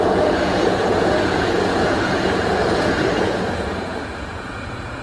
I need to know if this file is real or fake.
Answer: fake